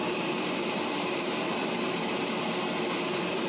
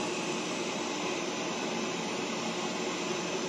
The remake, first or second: first